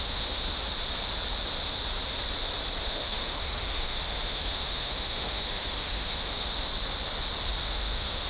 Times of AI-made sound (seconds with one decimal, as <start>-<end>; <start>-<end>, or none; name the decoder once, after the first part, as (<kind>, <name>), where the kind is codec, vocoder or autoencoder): 0.0-0.6 (autoencoder, DAC-VAE); 2.8-6.7; 7.6-8.3